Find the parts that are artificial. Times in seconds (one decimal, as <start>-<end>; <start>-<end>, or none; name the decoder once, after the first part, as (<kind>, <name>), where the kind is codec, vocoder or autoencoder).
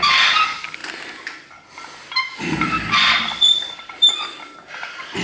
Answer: none